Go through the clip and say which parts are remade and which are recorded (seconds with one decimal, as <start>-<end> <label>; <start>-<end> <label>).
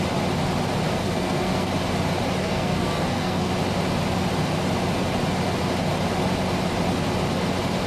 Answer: 0.0-0.9 recorded; 0.9-1.7 remade; 1.7-2.4 recorded; 2.4-3.5 remade; 3.5-7.9 recorded